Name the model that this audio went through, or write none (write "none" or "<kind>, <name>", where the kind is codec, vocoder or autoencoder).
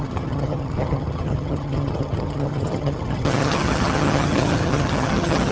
vocoder, HiFi-GAN